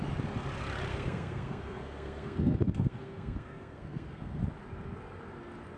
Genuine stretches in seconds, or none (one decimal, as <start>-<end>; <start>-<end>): 0.0-0.9; 4.4-5.8